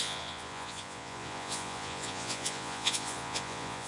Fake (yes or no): yes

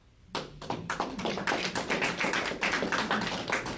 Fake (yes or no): no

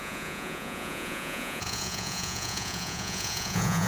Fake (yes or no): yes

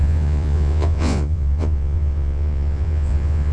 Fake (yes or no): yes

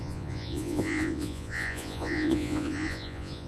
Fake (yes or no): yes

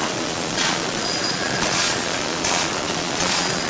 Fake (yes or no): yes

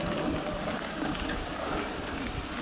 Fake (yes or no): no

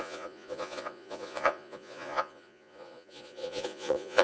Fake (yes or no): yes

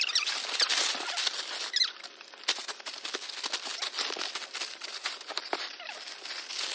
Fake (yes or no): no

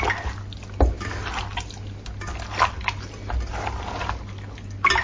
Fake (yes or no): no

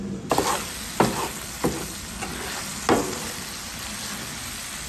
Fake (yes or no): no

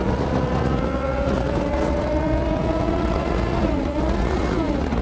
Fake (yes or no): yes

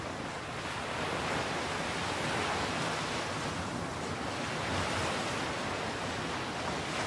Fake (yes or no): no